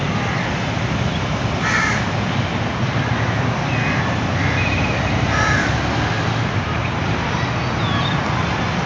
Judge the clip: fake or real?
real